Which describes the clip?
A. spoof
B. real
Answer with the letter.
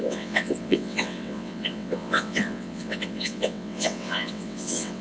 A